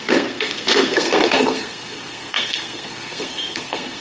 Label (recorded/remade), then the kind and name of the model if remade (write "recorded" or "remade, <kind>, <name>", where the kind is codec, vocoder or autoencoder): remade, codec, SNAC